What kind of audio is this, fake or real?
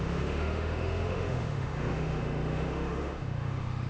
fake